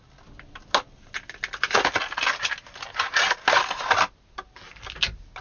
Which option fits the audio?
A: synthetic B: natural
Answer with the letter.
B